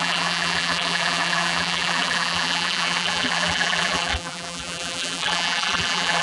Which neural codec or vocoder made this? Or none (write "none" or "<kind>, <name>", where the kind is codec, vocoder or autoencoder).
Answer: vocoder, BigVGAN v2